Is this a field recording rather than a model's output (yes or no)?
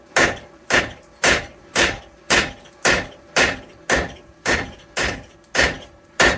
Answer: no